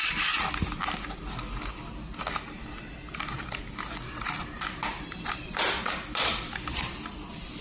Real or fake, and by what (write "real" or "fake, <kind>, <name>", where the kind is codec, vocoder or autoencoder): real